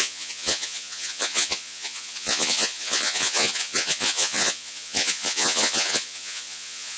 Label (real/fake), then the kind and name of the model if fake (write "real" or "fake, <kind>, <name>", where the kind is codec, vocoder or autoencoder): fake, vocoder, Vocos